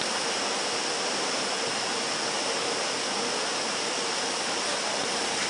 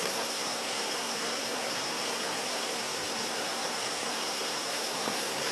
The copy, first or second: second